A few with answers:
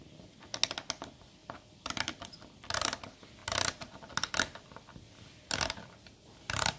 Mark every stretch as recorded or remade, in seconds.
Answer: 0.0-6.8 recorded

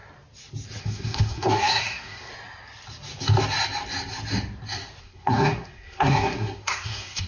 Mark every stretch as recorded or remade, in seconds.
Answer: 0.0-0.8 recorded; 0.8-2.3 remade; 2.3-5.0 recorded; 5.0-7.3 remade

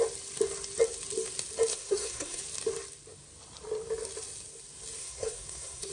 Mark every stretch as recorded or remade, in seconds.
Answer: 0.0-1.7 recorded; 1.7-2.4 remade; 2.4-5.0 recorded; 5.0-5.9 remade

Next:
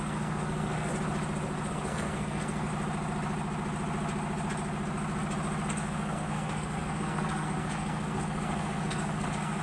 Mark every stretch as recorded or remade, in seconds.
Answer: 0.0-0.9 remade; 0.9-1.7 recorded; 1.7-2.7 remade; 2.7-5.7 recorded; 5.7-9.6 remade

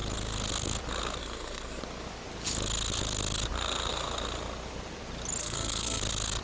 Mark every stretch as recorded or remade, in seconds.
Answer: 0.0-1.2 recorded; 1.2-1.8 remade; 1.8-5.4 recorded; 5.4-6.0 remade; 6.0-6.4 recorded